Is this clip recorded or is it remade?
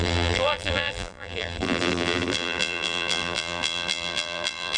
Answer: remade